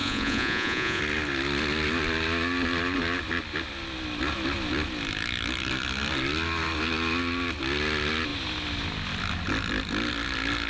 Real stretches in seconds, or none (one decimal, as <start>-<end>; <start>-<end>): 1.0-10.7